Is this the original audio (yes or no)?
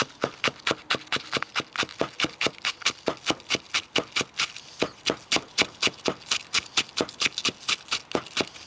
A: yes